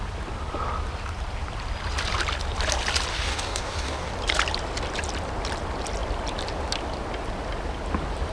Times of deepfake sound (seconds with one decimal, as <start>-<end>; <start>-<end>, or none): 3.1-4.1